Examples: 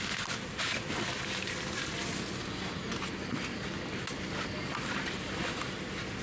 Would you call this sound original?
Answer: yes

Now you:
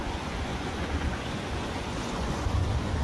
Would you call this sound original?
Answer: no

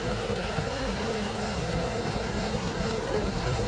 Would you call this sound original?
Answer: no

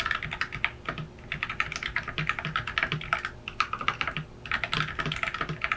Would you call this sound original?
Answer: yes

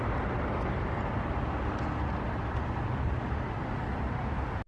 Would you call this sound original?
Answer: yes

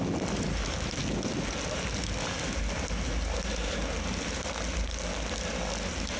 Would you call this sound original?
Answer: yes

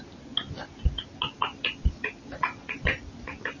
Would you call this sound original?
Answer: yes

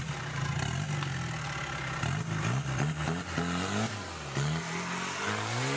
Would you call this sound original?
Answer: yes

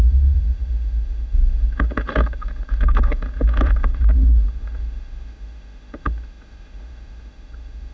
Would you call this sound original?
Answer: no